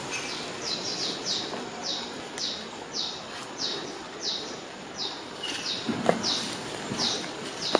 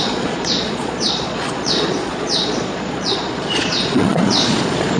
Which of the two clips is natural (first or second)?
first